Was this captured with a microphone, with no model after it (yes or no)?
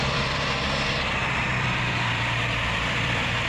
no